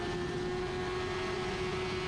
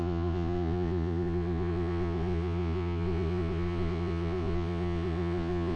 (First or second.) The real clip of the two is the first